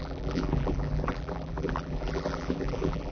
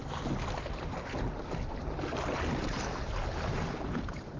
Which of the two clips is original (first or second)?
second